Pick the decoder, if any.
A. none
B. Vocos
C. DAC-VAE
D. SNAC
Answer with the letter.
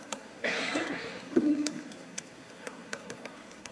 D